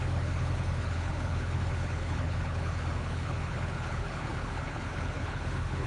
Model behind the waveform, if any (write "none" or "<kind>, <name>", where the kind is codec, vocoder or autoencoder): codec, HILCodec